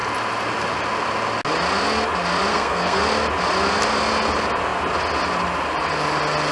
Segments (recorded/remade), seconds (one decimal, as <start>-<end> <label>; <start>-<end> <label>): 0.0-2.5 recorded; 2.5-3.0 remade; 3.0-6.5 recorded